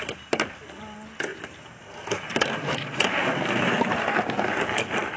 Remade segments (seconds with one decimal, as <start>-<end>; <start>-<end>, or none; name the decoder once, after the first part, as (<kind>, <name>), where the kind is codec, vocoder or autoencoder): none